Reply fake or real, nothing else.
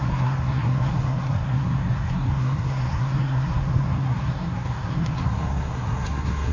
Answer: fake